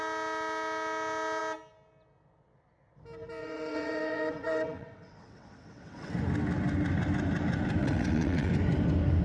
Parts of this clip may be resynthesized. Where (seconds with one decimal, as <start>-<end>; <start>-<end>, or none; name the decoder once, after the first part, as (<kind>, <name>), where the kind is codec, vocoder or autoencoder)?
3.4-6.1 (vocoder, WaveNeXt); 7.8-8.5